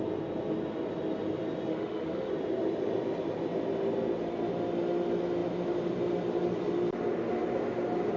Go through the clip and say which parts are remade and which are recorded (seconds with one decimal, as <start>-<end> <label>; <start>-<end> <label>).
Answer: 0.0-1.7 recorded; 1.7-2.3 remade; 2.3-8.2 recorded